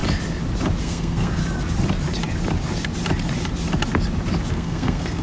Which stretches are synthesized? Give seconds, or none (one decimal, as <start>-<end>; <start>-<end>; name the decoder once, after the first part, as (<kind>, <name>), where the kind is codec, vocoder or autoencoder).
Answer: 0.8-1.4 (codec, SNAC); 4.5-5.2